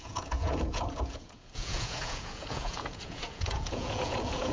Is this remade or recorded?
remade